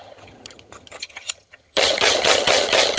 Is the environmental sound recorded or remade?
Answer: remade